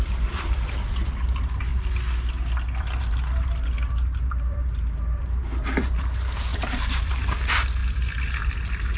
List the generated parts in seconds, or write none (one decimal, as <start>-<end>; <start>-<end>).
0.0-1.7; 2.8-7.8